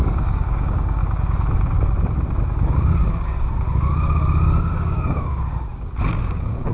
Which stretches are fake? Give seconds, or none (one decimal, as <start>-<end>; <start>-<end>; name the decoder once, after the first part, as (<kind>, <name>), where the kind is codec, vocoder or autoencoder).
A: 0.0-1.0 (codec, DAC); 4.7-5.5; 6.2-6.7